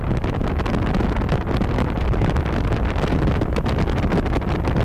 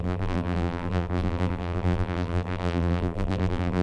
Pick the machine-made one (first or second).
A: second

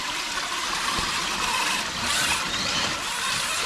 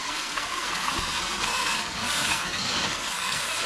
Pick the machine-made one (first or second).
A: second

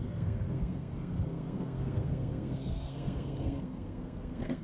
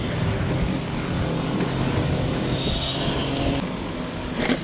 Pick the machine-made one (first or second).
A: first